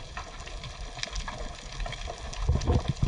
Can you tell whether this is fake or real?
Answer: real